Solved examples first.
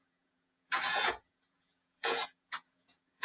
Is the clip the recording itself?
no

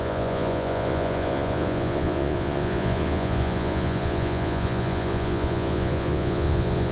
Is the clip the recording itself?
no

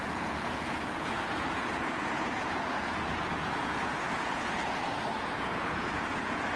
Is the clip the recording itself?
no